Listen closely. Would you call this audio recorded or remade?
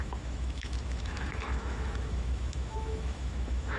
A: remade